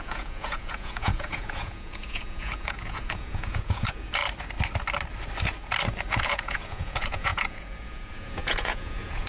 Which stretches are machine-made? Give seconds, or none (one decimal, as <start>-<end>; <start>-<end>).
0.0-4.2; 6.1-9.3